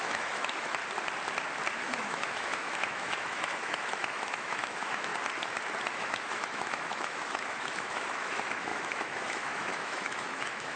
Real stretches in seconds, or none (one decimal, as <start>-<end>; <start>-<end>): 0.8-1.8; 5.1-5.9